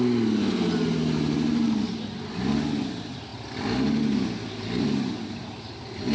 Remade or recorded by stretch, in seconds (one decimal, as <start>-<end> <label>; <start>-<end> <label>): 0.0-6.1 recorded